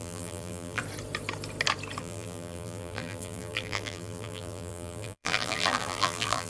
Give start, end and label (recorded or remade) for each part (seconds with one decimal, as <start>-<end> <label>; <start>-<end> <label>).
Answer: 0.0-0.8 remade; 0.8-2.0 recorded; 2.0-6.5 remade